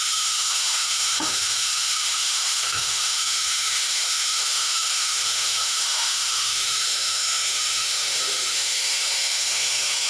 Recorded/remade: remade